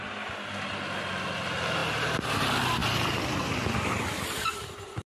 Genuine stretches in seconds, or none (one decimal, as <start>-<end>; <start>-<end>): 0.0-5.1